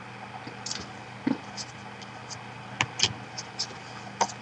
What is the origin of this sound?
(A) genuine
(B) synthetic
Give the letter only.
A